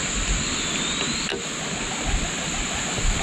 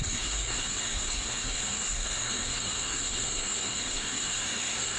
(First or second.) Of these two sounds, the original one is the first